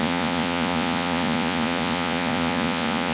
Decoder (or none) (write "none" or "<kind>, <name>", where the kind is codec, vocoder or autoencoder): vocoder, Vocos